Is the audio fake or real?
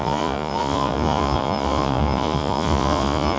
fake